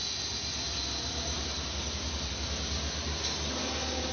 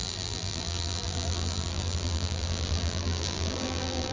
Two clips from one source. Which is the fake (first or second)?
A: second